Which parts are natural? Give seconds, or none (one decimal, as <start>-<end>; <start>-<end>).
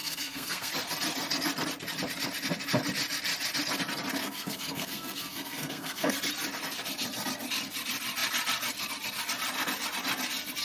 0.7-4.2; 6.1-10.6